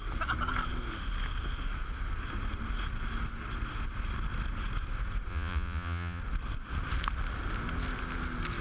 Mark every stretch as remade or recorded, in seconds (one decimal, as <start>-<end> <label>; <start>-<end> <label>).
0.0-5.3 recorded; 5.3-6.2 remade; 6.2-8.6 recorded